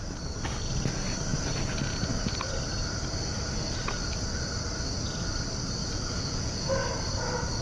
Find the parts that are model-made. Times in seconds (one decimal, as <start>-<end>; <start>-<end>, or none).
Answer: 5.8-6.7